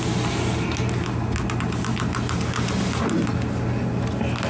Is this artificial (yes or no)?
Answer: no